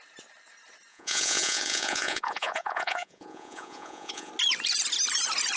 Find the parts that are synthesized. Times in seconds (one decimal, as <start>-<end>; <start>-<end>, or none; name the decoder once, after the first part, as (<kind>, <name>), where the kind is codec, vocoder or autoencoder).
0.9-4.3 (vocoder, Vocos)

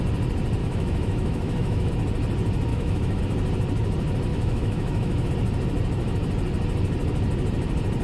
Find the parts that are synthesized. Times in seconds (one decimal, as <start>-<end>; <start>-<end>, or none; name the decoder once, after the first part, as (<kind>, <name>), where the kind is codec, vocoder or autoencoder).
0.6-1.9 (autoencoder, DAC-VAE); 2.7-3.2; 4.3-5.3

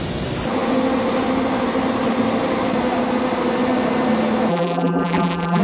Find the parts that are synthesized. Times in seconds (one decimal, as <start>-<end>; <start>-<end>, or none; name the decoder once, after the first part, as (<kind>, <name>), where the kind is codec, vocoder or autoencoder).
4.5-5.6 (vocoder, BigVGAN v2)

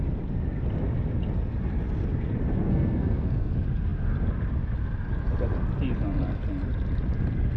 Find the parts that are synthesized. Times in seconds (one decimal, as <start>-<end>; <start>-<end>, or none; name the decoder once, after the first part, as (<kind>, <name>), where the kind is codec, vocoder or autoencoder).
2.5-3.5 (codec, SNAC)